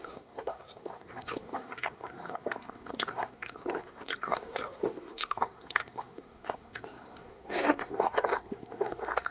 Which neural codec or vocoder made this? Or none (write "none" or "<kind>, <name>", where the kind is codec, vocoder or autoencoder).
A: codec, SNAC